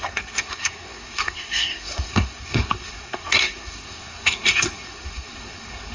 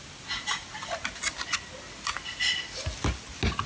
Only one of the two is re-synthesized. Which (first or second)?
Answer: first